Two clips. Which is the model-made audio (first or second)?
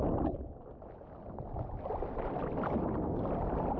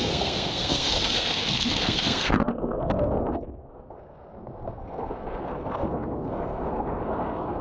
second